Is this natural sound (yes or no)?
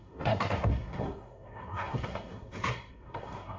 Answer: no